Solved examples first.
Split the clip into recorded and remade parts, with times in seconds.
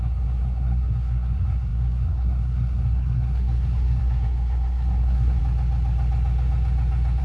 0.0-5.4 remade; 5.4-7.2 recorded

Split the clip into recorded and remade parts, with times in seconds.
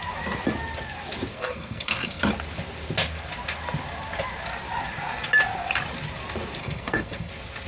0.0-1.3 recorded; 1.3-2.2 remade; 2.2-6.6 recorded; 6.6-7.3 remade; 7.3-7.7 recorded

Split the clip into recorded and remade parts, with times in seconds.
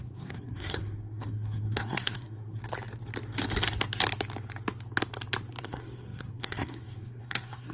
0.0-2.6 remade; 2.6-5.6 recorded; 5.6-7.7 remade